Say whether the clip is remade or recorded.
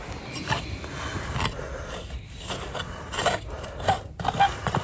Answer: recorded